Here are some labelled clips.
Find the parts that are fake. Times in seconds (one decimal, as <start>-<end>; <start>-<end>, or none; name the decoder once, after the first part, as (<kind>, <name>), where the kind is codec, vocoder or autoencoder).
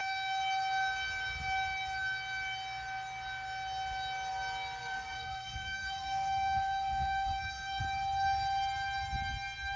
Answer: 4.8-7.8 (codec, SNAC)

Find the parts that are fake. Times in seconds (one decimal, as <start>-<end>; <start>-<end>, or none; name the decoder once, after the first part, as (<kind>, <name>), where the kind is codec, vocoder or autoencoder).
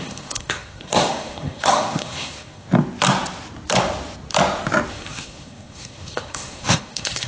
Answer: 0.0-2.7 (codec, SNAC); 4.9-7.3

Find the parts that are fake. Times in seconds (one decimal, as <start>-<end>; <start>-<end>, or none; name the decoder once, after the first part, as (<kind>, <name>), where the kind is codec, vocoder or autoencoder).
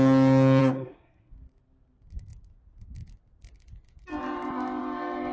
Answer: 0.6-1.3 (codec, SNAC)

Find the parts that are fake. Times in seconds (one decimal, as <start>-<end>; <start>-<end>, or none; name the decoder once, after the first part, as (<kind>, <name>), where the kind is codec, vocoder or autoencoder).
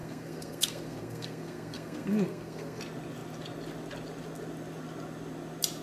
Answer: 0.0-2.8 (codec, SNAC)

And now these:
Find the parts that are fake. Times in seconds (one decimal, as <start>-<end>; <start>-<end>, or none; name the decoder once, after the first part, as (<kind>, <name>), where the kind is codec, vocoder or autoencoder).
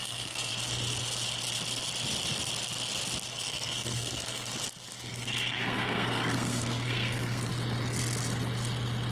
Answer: 0.0-0.5 (codec, SNAC); 3.3-4.5; 5.1-7.5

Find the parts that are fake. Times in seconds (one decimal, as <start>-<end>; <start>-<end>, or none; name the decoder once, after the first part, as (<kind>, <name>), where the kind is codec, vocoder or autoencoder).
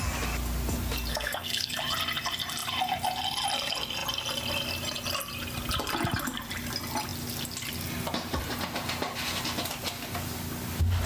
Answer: 1.1-1.7 (codec, SNAC)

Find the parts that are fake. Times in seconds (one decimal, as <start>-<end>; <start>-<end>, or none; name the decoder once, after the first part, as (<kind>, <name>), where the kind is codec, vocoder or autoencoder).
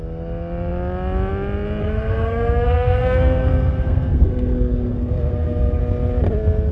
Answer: 1.8-5.8 (codec, SNAC)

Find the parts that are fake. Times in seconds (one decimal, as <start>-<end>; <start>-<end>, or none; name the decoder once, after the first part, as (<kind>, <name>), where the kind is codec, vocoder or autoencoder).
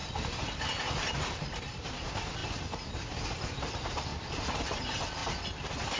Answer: none